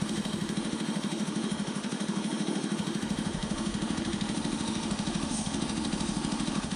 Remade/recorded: remade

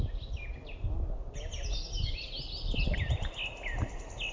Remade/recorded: recorded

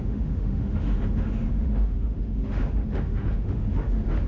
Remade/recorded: remade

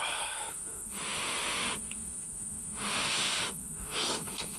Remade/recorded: remade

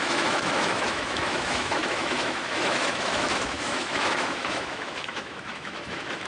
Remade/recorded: remade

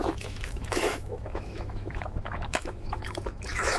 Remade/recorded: remade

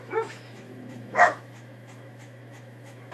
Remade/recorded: remade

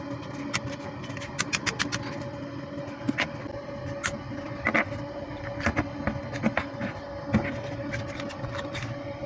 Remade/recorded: recorded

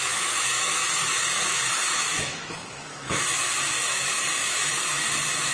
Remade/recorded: remade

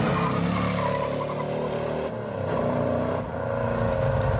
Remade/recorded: recorded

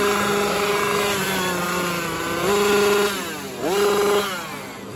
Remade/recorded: recorded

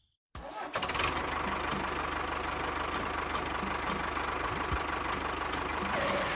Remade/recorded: recorded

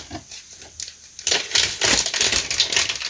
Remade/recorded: recorded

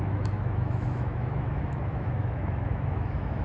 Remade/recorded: remade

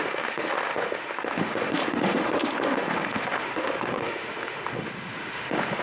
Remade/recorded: remade